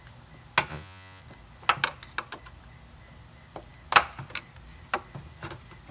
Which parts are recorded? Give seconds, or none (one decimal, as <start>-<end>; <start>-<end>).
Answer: 0.0-0.7; 1.2-5.9